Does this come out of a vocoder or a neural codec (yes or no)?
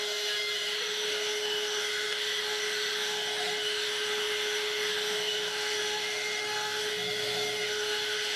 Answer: yes